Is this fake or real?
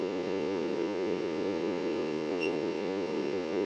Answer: fake